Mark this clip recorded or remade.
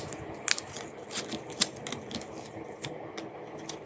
recorded